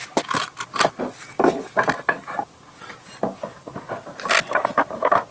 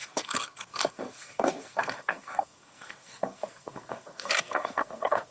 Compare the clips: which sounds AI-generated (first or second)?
second